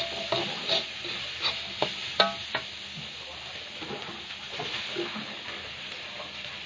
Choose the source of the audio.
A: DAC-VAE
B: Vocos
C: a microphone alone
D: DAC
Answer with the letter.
C